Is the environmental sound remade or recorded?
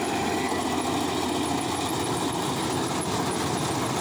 recorded